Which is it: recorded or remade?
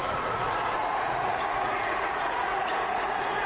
remade